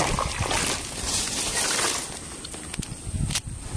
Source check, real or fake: real